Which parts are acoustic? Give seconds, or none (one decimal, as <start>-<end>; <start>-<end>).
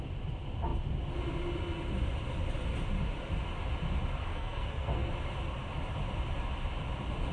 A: 0.0-4.2; 5.1-7.3